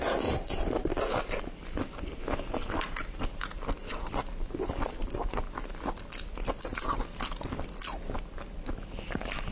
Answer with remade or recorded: recorded